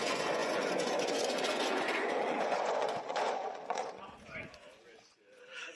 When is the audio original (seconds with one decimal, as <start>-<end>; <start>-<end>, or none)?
none